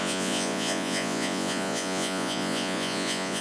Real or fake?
fake